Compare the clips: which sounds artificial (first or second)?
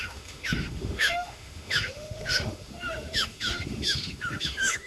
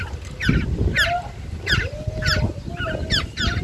first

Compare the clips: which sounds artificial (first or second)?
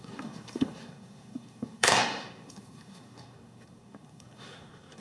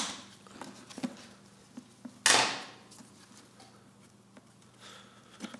first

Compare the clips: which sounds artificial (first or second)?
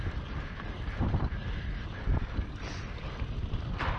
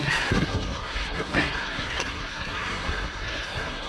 second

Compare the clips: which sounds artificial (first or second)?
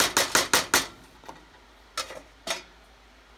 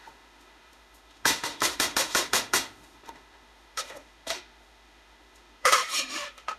second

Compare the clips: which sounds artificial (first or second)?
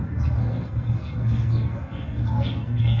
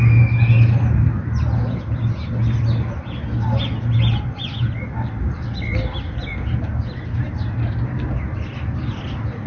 first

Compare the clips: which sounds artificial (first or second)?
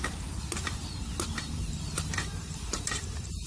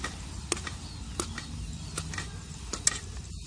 first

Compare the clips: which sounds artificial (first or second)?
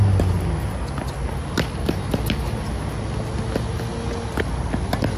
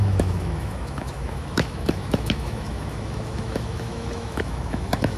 second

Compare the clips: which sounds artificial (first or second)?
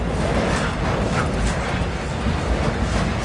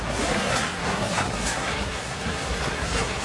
second